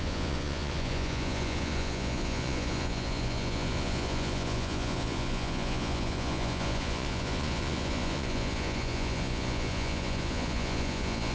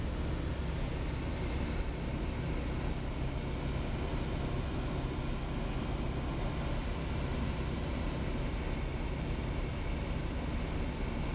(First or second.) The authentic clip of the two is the second